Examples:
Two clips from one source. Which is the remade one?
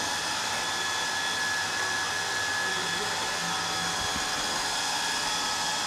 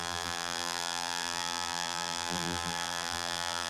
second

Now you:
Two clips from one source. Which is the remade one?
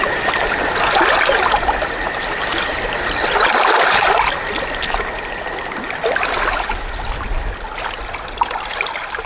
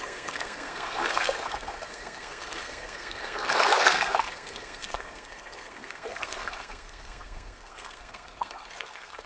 second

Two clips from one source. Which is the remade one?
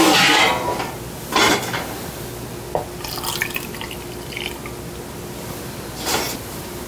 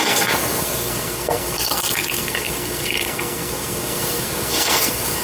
second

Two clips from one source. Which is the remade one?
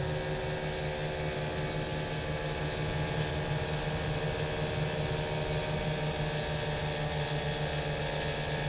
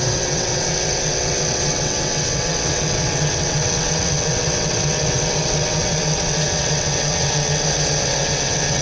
second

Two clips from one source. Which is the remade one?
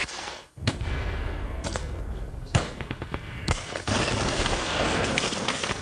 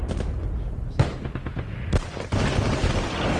first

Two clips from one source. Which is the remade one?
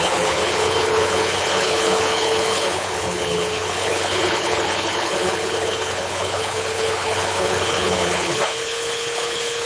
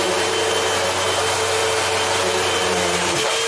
first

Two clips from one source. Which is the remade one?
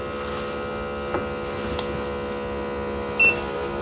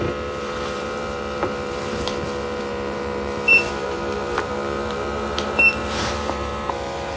second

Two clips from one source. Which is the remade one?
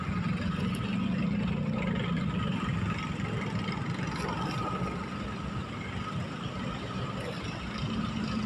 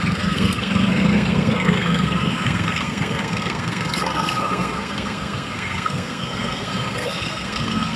second